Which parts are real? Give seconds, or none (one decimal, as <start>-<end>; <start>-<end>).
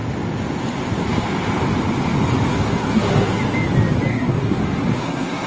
0.0-2.5; 3.4-4.1